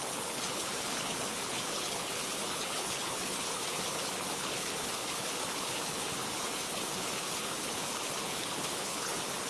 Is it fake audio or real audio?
fake